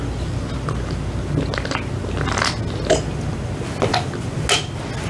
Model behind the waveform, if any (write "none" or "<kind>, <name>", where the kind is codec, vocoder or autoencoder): none